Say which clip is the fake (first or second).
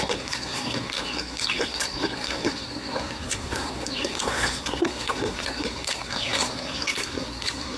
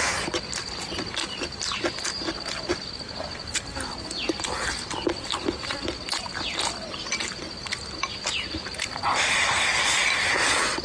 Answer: first